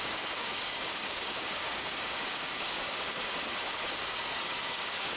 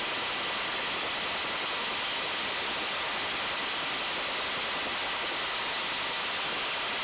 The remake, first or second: first